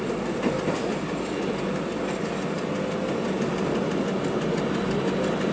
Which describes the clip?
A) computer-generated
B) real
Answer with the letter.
B